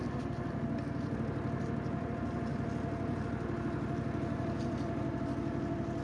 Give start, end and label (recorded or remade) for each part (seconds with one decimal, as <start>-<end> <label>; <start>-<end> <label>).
0.0-6.0 recorded